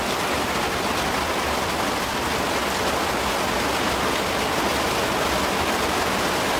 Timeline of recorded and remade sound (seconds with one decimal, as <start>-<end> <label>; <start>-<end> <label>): 0.0-6.6 recorded